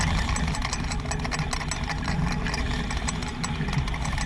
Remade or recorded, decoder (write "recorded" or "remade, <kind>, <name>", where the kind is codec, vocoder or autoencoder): recorded